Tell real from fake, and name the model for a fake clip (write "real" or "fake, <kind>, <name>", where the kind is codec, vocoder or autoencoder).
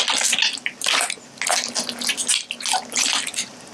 real